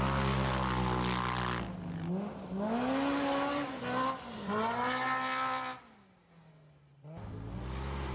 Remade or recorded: recorded